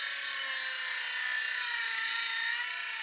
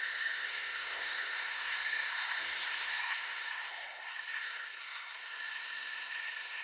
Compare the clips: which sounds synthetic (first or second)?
second